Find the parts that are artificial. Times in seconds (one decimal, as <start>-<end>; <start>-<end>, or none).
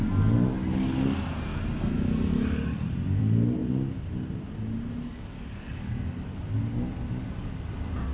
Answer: none